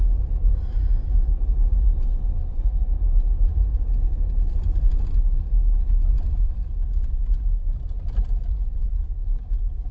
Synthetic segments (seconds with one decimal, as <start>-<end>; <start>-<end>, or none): 0.5-3.8